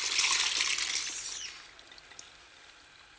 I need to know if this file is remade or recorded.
recorded